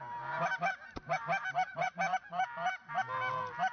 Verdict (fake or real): real